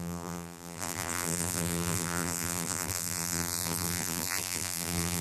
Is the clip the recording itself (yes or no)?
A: no